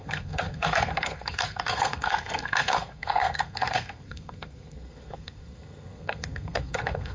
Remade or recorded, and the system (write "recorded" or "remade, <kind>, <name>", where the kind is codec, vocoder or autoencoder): remade, codec, SNAC